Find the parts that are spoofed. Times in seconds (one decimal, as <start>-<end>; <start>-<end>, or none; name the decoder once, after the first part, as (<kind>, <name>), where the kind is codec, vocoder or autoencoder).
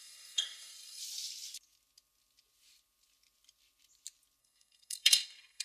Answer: 0.0-1.0 (codec, SNAC); 4.4-5.6